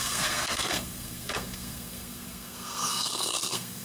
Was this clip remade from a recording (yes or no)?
yes